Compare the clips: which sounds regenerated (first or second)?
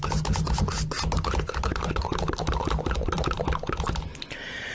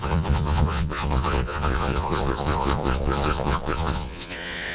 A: second